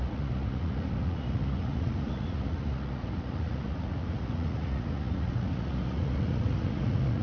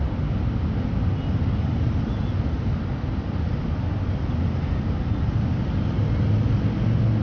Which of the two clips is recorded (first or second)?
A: second